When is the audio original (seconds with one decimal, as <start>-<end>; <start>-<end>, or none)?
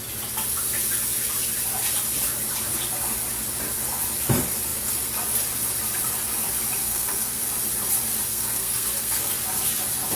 0.0-6.8; 7.5-8.3; 9.3-10.2